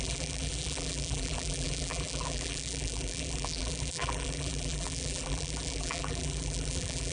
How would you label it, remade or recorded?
remade